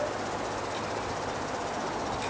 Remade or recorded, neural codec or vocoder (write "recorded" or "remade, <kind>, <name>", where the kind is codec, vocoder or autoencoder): recorded